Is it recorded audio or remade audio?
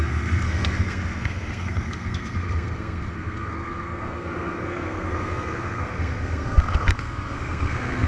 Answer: remade